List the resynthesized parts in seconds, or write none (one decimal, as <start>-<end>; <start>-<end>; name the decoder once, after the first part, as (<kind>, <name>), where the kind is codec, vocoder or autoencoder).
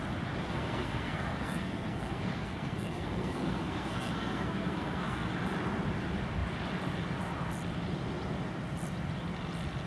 0.4-5.3 (codec, SNAC)